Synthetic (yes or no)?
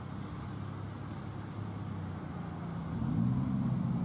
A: no